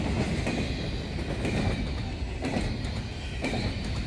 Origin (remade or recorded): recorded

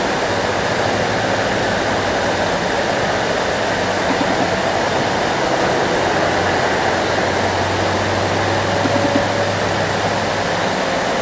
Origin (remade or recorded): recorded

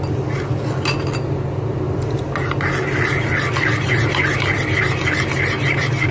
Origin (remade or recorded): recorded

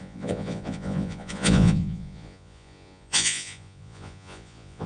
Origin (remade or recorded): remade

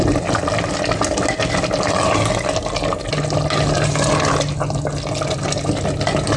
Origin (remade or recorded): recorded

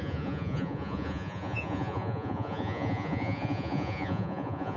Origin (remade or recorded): remade